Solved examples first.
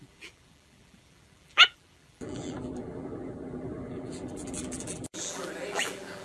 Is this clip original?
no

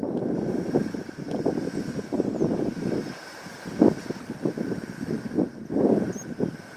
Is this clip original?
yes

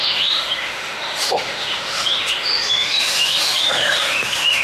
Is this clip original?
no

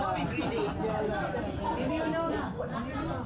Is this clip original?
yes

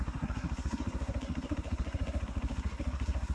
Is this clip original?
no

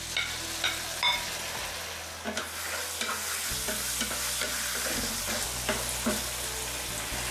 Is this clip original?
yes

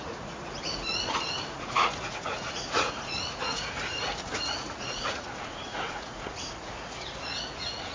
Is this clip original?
no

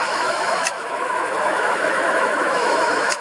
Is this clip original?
no